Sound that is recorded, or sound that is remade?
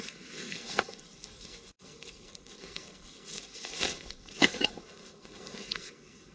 remade